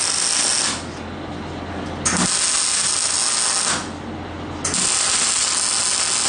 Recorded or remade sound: recorded